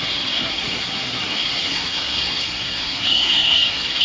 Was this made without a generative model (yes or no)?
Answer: no